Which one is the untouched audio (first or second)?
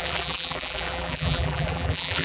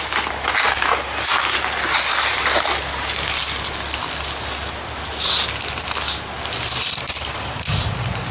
second